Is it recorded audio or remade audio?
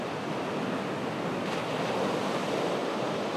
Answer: recorded